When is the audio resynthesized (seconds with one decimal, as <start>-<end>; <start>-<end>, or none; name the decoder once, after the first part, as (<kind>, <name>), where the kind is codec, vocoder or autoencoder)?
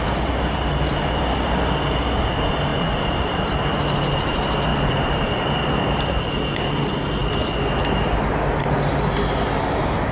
2.7-3.7 (vocoder, BigVGAN v2); 4.7-6.2